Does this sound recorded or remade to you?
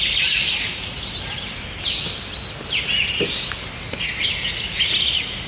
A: recorded